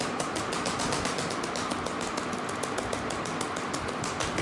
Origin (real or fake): real